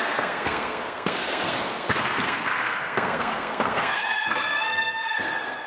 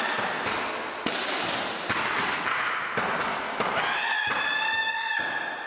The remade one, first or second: first